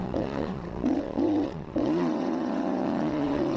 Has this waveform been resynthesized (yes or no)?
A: yes